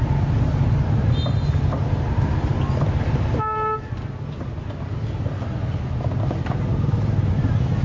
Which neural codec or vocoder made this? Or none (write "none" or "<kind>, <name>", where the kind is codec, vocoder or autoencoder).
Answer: none